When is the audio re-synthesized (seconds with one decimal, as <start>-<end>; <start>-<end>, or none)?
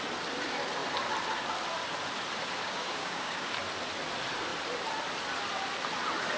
2.6-3.5